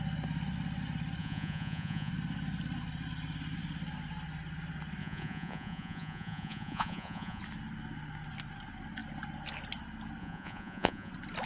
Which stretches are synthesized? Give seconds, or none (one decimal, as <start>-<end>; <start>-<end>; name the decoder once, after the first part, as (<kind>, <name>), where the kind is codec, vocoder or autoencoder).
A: 1.2-2.1 (vocoder, Vocos); 5.0-7.4; 10.2-11.1